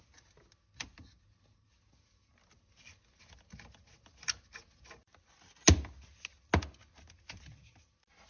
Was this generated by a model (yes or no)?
no